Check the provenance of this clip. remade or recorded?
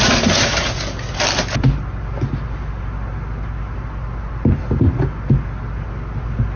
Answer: recorded